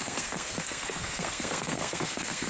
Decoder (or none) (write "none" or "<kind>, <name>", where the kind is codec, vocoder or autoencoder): codec, SNAC